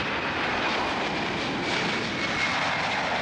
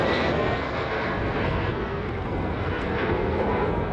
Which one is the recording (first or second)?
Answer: first